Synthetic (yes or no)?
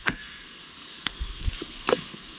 yes